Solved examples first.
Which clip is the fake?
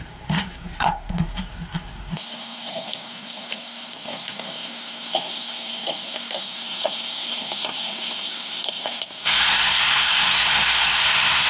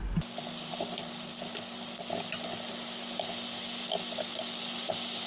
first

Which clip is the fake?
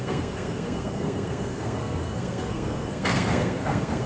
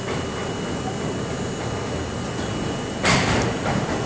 first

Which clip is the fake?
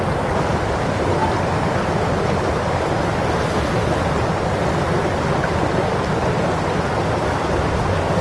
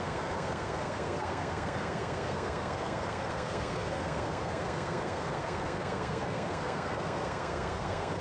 second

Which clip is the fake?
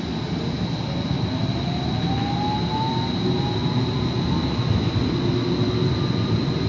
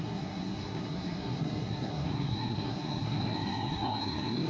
second